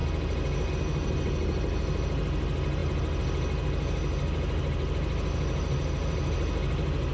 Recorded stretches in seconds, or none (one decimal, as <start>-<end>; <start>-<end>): 0.0-7.1